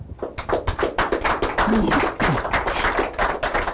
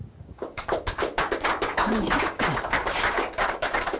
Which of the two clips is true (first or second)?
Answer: first